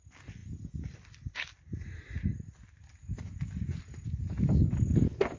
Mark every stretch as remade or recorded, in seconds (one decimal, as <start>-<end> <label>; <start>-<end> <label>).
0.0-5.4 recorded